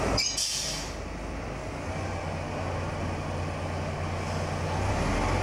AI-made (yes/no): no